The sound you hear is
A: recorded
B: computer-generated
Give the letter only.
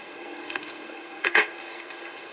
B